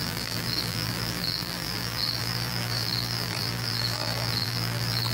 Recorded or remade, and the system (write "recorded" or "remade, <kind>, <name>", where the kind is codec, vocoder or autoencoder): remade, vocoder, BigVGAN v2